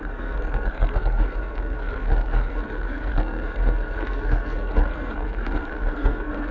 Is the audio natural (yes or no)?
no